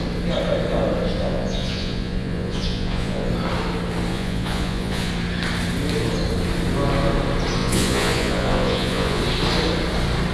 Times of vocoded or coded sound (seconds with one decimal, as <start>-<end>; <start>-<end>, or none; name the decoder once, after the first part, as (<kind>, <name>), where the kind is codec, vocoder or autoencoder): 1.2-3.3 (vocoder, Vocos); 4.1-5.1; 7.6-9.2